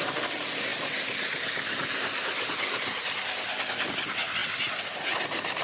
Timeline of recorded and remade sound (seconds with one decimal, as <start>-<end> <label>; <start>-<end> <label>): 0.0-5.6 recorded